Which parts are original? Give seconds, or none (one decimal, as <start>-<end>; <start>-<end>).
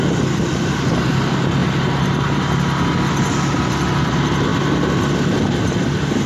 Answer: 0.0-1.6; 2.9-6.3